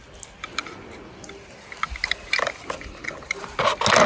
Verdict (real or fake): real